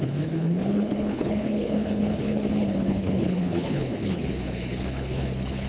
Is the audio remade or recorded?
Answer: remade